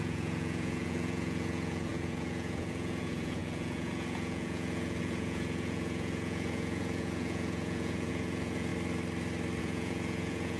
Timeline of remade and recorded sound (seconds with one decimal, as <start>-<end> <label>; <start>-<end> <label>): 0.0-8.7 remade; 8.7-9.6 recorded; 9.6-10.6 remade